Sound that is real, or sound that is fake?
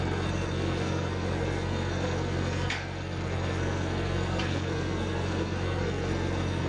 fake